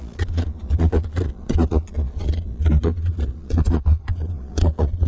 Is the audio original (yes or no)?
no